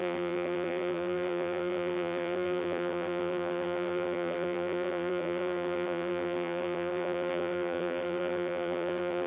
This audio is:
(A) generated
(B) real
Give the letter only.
A